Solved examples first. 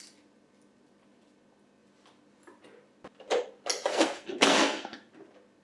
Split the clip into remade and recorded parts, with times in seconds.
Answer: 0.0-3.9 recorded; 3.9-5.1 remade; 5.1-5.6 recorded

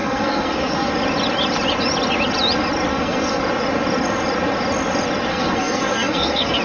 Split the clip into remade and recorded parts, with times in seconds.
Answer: 0.0-0.9 remade; 0.9-2.9 recorded; 2.9-3.4 remade; 3.4-5.3 recorded; 5.3-6.6 remade

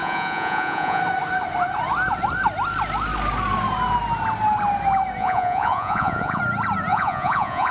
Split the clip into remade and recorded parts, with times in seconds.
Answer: 0.0-1.0 remade; 1.0-5.2 recorded; 5.2-6.4 remade; 6.4-6.9 recorded; 6.9-7.7 remade

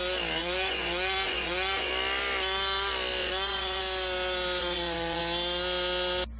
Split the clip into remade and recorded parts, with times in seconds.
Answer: 0.0-0.4 recorded; 0.4-1.9 remade; 1.9-3.2 recorded; 3.2-3.8 remade; 3.8-4.6 recorded; 4.6-5.2 remade; 5.2-6.4 recorded

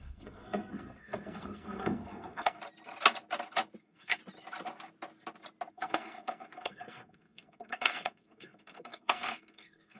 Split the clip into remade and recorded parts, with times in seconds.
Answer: 0.0-2.6 remade; 2.6-3.8 recorded; 3.8-4.2 remade; 4.2-5.7 recorded; 5.7-10.0 remade